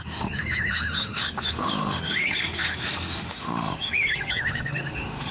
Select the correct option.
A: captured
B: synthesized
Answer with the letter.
B